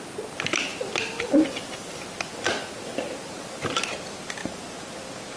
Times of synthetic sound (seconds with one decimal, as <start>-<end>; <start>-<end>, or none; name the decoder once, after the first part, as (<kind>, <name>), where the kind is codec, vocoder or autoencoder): 4.4-5.0 (vocoder, BigVGAN v2)